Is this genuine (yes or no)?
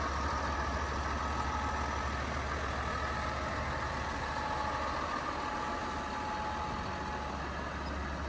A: yes